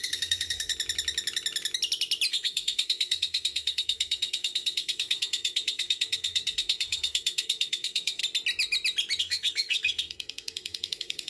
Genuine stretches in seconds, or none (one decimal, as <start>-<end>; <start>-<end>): 0.7-2.3; 8.2-9.2